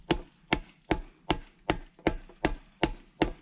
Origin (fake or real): real